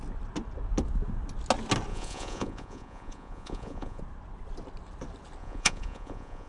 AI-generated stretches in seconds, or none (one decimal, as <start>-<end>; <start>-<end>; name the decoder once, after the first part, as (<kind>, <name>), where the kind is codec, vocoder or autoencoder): 1.9-4.0 (vocoder, Vocos); 5.4-6.5